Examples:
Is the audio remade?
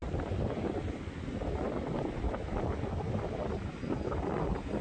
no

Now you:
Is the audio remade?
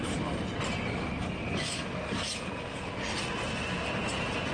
no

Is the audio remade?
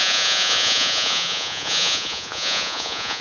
yes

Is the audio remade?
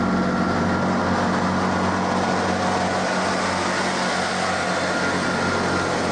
no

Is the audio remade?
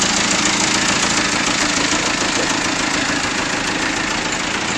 no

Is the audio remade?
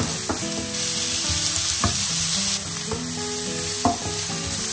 no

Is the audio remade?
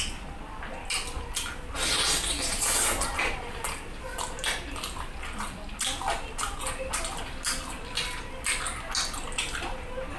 no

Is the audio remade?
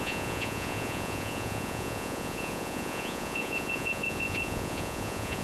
yes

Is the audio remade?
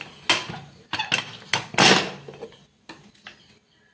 no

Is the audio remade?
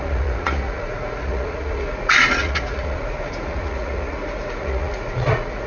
yes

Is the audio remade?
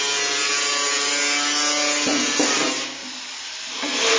no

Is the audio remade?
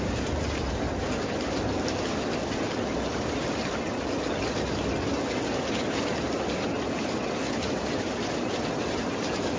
no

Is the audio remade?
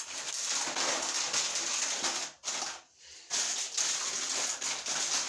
no